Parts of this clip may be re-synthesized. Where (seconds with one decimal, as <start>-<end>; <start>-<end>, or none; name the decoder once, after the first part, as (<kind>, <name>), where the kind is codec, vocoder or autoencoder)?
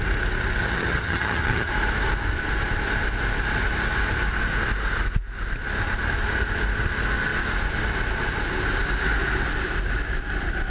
0.6-1.7 (vocoder, HiFi-GAN)